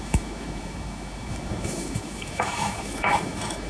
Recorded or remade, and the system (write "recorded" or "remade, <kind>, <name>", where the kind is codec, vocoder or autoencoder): remade, autoencoder, DAC-VAE